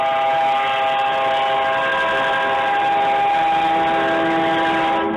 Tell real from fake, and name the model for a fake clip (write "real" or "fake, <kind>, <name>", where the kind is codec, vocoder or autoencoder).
real